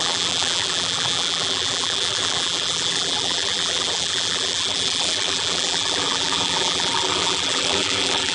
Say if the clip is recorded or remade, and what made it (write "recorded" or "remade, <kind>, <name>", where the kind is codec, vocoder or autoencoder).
remade, vocoder, BigVGAN v2